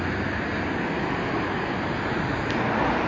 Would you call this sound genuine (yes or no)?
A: yes